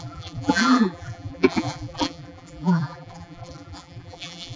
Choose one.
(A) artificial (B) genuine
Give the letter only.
A